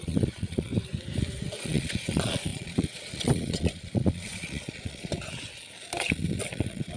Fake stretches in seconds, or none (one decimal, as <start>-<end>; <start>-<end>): 0.0-0.7; 1.6-5.1; 6.4-7.0